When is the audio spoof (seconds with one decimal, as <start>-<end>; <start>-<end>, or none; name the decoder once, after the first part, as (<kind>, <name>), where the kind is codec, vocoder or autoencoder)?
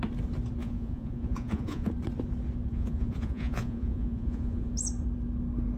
0.6-1.9 (vocoder, Vocos); 2.7-4.7